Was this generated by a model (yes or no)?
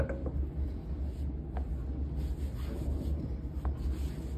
no